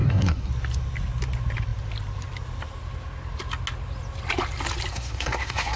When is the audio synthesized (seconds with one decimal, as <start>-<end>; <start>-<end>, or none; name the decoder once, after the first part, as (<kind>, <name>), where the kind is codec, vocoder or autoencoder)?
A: 0.0-0.5 (codec, SNAC); 4.9-5.8

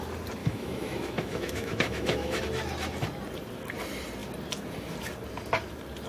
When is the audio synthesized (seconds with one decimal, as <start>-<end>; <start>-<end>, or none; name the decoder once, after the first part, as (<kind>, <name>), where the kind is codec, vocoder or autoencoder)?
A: 0.4-2.4 (autoencoder, DAC-VAE)

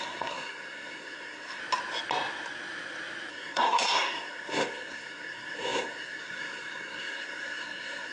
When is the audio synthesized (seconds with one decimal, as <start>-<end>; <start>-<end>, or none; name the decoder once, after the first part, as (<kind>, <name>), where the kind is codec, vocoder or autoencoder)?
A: 0.0-1.6 (codec, SNAC); 3.3-8.1

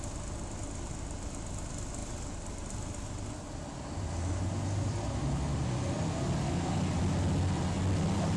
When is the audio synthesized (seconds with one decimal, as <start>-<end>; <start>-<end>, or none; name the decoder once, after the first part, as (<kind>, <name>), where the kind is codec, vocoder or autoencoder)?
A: none